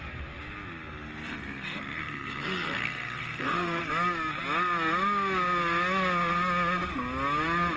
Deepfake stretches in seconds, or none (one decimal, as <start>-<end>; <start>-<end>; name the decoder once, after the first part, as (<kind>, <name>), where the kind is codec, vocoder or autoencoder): 1.2-3.8 (codec, SNAC)